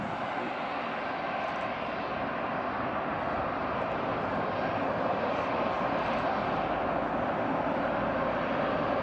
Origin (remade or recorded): recorded